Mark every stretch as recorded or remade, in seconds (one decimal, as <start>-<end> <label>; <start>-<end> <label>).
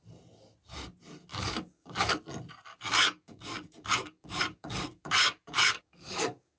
0.0-1.3 recorded; 1.3-2.2 remade; 2.2-2.7 recorded; 2.7-6.6 remade